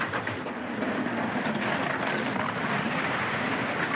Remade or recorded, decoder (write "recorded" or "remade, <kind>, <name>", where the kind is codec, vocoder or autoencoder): recorded